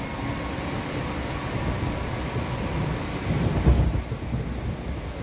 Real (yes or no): yes